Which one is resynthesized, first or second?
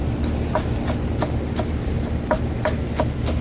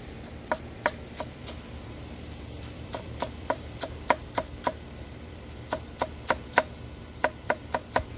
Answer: second